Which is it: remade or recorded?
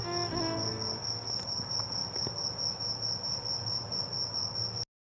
recorded